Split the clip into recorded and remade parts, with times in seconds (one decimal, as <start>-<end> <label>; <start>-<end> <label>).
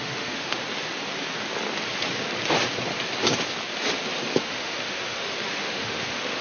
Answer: 0.0-0.6 remade; 0.6-4.4 recorded; 4.4-6.4 remade